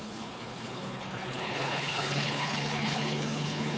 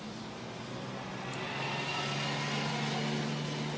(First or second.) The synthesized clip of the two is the first